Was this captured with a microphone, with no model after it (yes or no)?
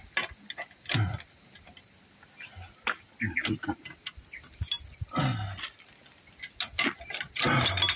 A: yes